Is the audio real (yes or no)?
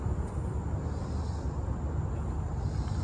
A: yes